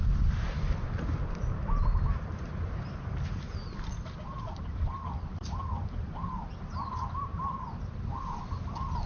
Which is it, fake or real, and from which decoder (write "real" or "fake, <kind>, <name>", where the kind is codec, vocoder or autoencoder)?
real